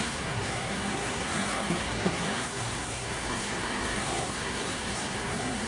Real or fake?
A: fake